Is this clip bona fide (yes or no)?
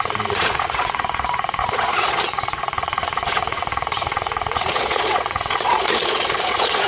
no